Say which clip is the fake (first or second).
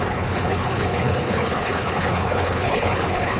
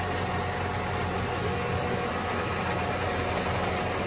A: first